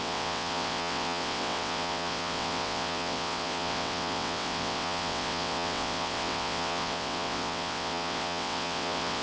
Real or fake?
fake